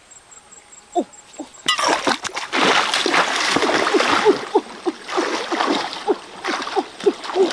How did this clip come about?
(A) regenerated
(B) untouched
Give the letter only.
B